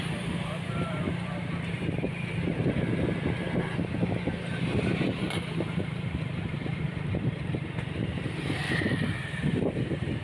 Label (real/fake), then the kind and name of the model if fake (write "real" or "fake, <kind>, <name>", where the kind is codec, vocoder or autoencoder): fake, vocoder, BigVGAN v2